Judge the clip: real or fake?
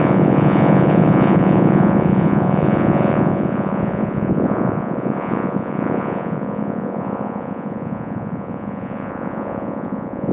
fake